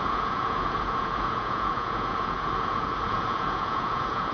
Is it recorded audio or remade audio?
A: remade